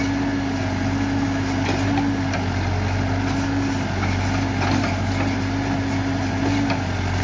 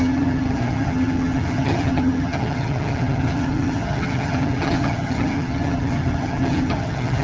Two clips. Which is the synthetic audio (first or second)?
second